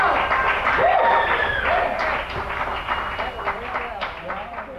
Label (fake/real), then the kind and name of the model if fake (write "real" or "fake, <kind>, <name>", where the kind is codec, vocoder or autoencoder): real